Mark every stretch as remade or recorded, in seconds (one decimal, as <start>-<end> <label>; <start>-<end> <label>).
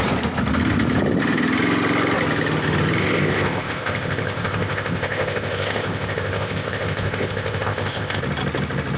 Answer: 0.0-3.0 recorded; 3.0-8.2 remade; 8.2-9.0 recorded